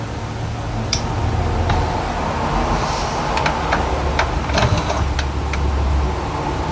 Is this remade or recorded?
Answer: remade